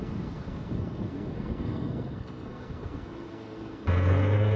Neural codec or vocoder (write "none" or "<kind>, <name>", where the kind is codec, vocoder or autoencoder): codec, SNAC